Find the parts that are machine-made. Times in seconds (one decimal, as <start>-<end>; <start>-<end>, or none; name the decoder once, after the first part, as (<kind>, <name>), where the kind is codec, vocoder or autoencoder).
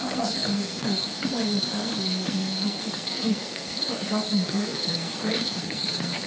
0.0-6.3 (codec, SNAC)